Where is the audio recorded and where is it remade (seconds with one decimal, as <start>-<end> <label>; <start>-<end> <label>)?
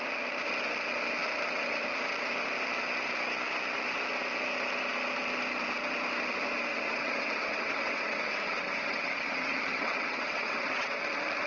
0.0-6.7 recorded; 6.7-11.0 remade; 11.0-11.5 recorded